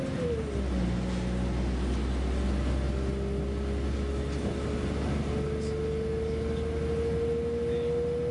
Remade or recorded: recorded